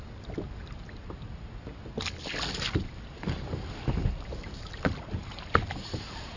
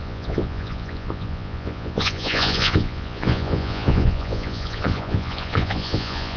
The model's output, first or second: second